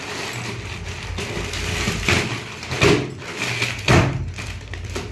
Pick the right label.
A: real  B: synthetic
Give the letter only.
A